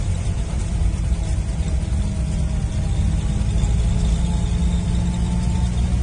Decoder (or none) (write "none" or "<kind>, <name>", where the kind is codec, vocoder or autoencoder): none